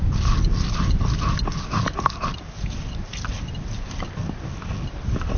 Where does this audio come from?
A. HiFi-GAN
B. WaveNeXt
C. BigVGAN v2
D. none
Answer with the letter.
D